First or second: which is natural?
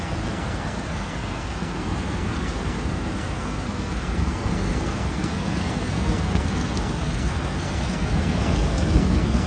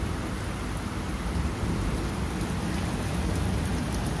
second